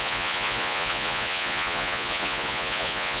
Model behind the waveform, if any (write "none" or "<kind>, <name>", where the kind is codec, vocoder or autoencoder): vocoder, Vocos